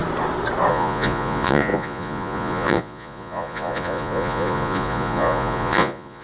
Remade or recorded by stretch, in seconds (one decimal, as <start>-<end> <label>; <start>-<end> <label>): 0.0-0.7 recorded; 0.7-6.2 remade